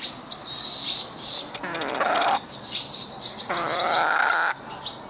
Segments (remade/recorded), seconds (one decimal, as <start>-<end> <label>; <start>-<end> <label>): 0.0-5.1 recorded